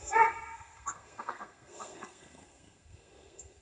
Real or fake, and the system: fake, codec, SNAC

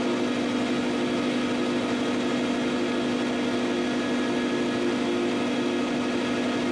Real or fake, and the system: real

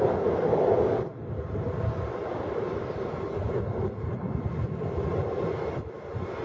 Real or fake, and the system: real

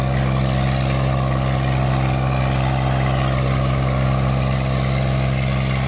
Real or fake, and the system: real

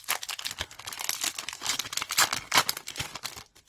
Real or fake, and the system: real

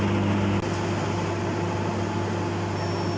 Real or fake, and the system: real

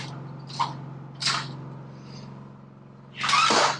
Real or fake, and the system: real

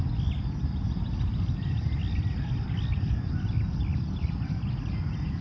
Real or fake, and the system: real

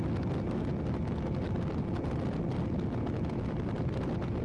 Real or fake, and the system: real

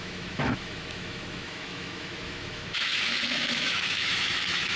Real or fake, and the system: fake, autoencoder, DAC-VAE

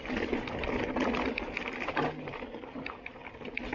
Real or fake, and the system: real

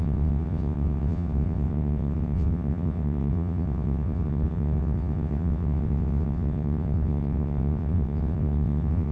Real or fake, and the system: fake, vocoder, WaveNeXt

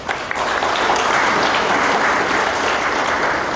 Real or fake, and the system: real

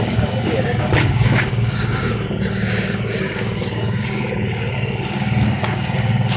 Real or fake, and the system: fake, codec, DAC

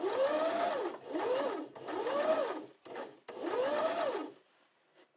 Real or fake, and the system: real